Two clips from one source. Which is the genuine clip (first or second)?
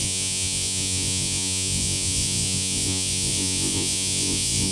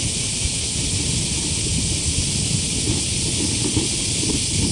second